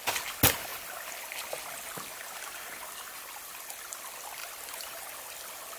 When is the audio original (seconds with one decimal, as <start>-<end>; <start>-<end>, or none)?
0.0-4.4; 5.1-5.8

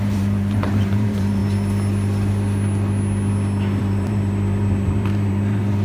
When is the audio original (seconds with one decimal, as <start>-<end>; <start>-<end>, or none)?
1.4-3.8

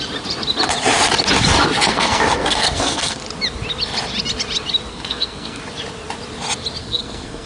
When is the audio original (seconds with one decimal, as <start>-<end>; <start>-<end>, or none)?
0.0-1.9; 3.2-4.9; 5.6-6.8

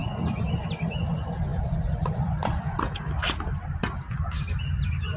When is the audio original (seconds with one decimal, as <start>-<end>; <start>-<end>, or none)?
0.0-5.2